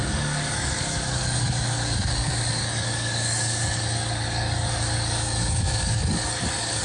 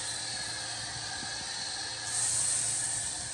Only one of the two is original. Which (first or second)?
second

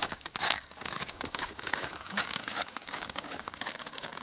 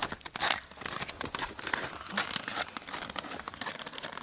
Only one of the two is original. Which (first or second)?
second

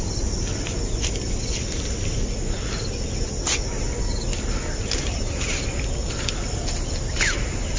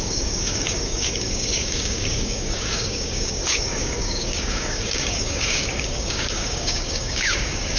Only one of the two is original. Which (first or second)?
first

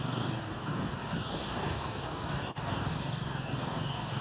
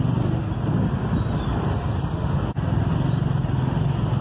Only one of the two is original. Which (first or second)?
second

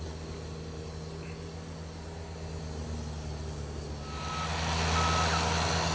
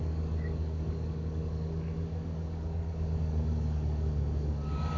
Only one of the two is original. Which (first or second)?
first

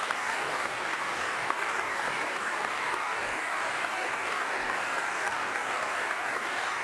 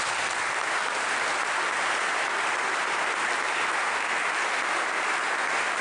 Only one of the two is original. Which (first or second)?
second